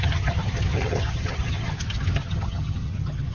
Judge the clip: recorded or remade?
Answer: remade